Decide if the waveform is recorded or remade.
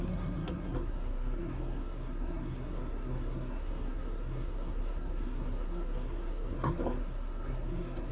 remade